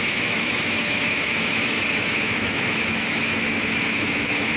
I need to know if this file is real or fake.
fake